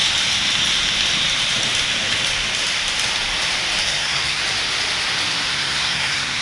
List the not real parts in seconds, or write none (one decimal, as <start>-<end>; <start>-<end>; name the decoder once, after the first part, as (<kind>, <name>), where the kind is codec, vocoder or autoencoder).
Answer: 3.8-4.4 (codec, SNAC); 5.5-6.4